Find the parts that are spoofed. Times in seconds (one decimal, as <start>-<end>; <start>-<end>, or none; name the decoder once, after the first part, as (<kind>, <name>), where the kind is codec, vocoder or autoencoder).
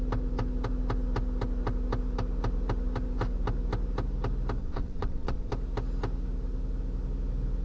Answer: 4.6-5.5 (vocoder, WaveNeXt)